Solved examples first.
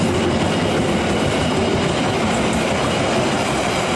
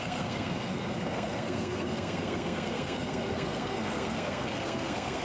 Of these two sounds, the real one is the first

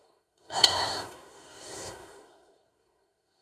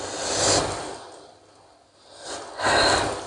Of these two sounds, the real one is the second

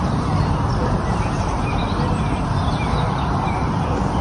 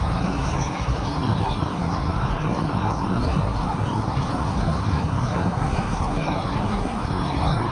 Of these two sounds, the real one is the first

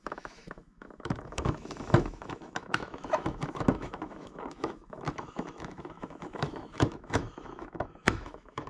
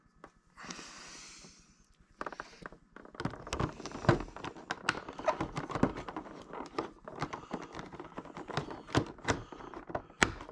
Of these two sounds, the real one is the second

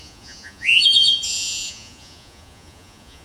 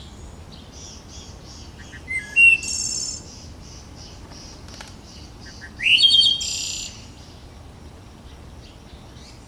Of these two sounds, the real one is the second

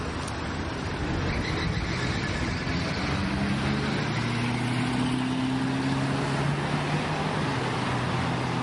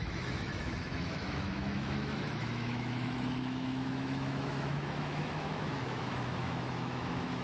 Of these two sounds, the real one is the first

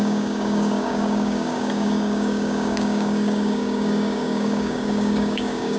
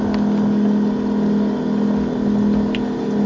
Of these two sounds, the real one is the second